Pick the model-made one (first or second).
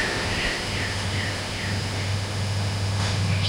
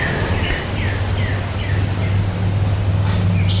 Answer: first